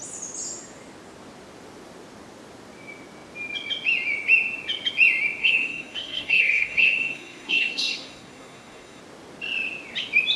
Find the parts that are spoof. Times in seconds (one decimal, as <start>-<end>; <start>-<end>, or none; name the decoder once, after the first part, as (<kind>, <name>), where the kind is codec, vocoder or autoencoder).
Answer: 5.4-9.0 (codec, SNAC)